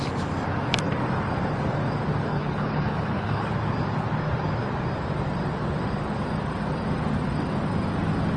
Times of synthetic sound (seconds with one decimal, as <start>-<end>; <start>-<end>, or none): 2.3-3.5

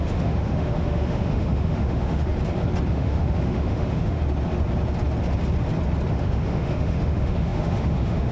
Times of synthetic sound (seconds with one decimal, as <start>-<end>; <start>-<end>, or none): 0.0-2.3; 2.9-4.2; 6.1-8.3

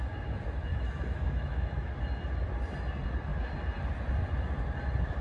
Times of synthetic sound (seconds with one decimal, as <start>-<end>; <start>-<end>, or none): 0.7-1.9